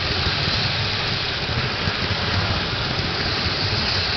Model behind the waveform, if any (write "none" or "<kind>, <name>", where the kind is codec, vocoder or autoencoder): none